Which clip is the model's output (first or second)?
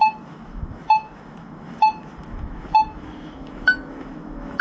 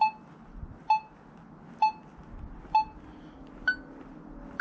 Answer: first